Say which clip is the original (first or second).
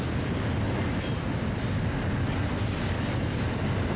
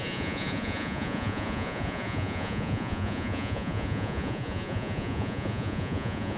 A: first